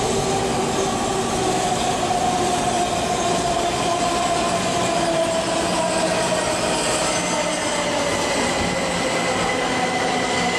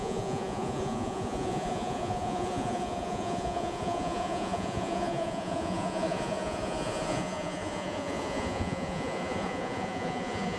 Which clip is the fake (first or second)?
second